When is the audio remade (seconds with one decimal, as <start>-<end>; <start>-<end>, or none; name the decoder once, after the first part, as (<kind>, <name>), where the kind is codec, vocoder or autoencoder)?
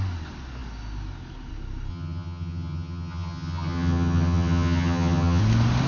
1.9-5.4 (vocoder, HiFi-GAN)